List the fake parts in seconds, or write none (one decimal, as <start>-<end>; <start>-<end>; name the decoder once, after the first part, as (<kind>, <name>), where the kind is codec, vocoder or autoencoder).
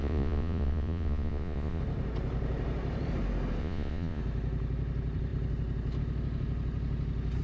0.0-1.8 (vocoder, Vocos); 3.6-4.2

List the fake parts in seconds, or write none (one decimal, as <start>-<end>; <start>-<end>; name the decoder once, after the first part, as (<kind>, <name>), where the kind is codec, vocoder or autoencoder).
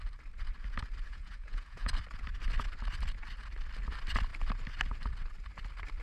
1.1-1.9 (vocoder, Vocos)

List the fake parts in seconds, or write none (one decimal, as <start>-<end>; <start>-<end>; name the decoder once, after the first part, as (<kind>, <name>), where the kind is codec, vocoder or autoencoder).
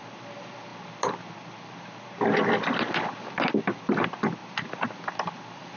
none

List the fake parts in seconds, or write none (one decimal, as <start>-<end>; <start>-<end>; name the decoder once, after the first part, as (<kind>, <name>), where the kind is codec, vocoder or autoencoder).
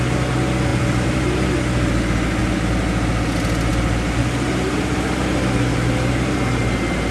0.7-1.5 (vocoder, BigVGAN v2)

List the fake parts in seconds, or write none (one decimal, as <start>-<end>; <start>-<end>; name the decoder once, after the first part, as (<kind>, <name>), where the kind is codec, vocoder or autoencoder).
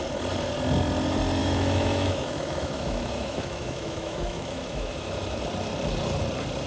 1.4-5.4 (autoencoder, DAC-VAE)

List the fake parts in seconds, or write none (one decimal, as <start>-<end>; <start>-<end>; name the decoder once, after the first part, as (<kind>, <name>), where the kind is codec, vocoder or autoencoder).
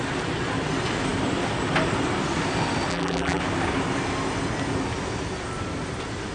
2.9-3.4 (vocoder, BigVGAN v2)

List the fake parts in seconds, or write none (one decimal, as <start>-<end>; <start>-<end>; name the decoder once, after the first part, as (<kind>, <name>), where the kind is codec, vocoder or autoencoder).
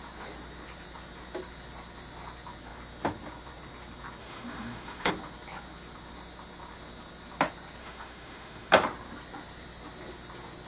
4.2-5.1 (autoencoder, DAC-VAE); 7.8-8.7